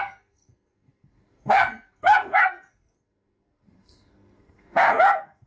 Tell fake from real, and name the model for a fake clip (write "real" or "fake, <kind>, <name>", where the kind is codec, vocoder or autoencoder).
fake, codec, SNAC